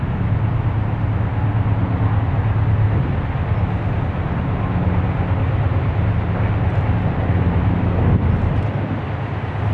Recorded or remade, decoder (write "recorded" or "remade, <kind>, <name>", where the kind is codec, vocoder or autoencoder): recorded